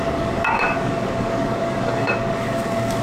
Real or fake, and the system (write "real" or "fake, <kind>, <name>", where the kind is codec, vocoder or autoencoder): fake, codec, DAC